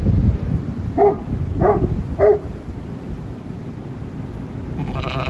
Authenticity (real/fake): real